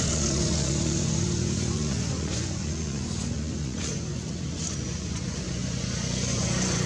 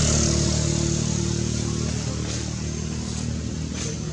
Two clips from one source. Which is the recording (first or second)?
second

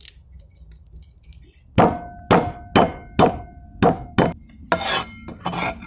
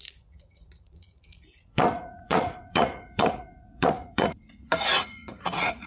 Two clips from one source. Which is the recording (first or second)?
first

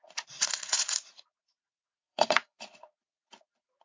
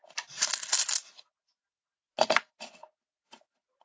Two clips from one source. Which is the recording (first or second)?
second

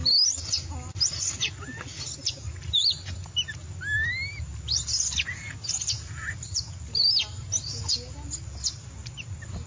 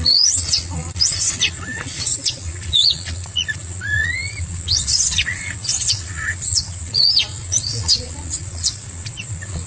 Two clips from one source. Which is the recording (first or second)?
first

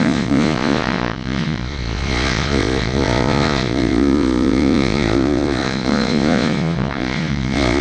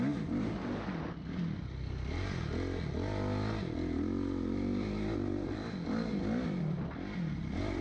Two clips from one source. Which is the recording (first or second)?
second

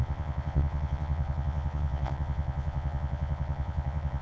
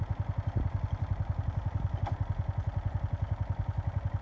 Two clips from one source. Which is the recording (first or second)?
second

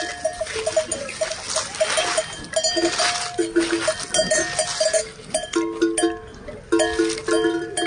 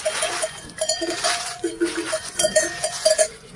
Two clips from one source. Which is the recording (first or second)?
first